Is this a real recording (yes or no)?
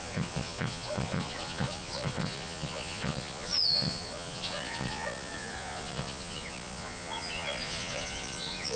no